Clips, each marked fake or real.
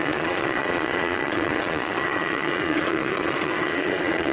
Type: fake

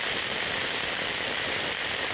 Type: real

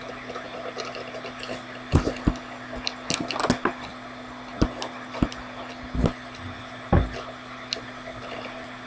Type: real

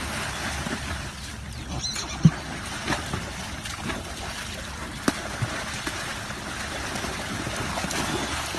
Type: real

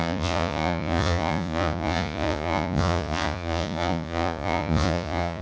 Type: fake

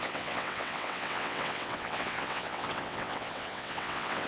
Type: fake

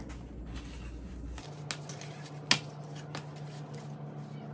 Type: real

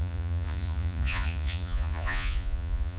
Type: fake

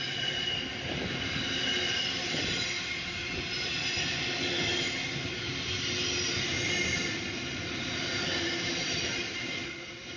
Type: real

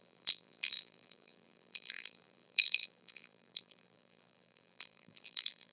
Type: fake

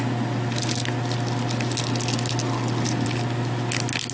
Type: real